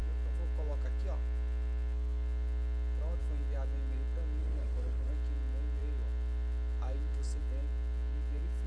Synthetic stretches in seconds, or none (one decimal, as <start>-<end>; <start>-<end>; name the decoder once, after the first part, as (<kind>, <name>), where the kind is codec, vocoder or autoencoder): 4.4-5.1 (codec, HILCodec)